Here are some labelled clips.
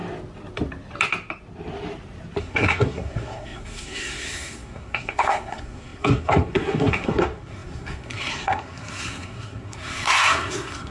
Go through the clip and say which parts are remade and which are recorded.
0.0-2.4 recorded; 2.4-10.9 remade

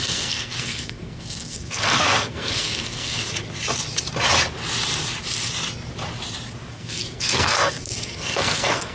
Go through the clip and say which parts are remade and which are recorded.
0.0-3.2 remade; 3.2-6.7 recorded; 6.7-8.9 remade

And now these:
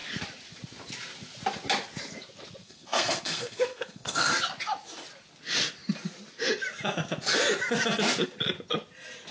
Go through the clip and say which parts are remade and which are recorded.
0.0-2.6 recorded; 2.6-4.3 remade; 4.3-9.3 recorded